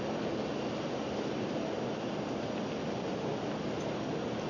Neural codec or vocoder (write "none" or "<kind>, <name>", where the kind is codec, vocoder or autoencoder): none